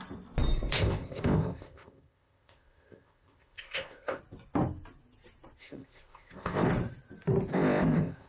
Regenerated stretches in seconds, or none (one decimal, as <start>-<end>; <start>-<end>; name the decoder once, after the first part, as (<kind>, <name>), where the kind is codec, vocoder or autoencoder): 0.7-4.2 (codec, ZipCodec); 5.6-6.7; 7.5-8.3